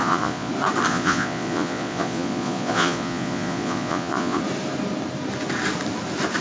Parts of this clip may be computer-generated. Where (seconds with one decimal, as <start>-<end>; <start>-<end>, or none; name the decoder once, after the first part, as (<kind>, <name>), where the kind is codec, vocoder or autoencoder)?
0.0-0.5 (vocoder, Vocos); 0.9-4.4